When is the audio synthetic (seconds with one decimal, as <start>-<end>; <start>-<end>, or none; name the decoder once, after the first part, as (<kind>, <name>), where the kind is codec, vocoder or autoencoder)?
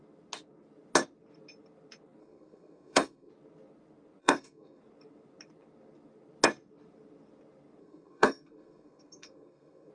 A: 2.2-3.3 (codec, SNAC); 4.2-4.8; 7.8-9.9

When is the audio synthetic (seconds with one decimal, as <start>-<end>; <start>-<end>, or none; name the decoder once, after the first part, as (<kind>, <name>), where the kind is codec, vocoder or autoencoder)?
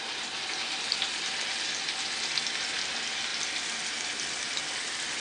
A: none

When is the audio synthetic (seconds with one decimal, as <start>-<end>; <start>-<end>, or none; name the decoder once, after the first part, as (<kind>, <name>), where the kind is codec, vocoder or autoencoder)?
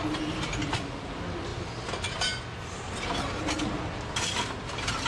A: none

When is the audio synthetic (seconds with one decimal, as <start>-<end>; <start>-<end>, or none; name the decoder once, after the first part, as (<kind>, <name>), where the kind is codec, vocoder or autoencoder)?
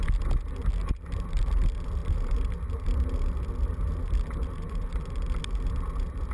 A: none